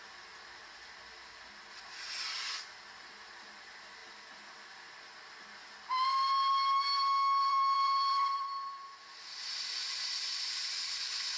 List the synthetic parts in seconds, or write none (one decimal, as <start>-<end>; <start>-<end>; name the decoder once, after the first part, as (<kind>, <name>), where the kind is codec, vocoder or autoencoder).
7.4-9.2 (vocoder, BigVGAN v2)